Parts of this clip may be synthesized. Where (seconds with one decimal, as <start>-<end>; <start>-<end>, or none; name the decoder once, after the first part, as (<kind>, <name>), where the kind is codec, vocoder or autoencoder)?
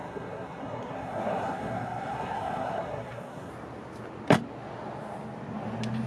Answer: 0.0-3.5 (codec, SNAC)